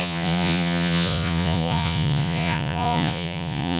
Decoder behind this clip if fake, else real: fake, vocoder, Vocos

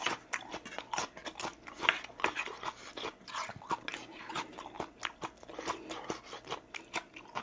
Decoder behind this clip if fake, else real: real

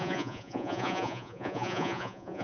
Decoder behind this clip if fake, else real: fake, vocoder, Vocos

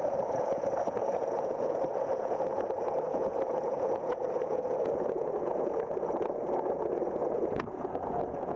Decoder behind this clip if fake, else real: fake, vocoder, Vocos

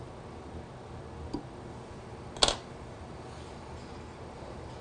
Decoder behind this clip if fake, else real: real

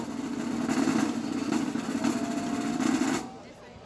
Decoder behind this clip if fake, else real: real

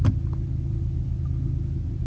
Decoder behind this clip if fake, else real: real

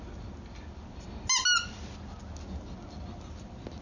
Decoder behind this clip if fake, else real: real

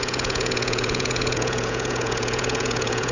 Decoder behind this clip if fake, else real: fake, vocoder, Vocos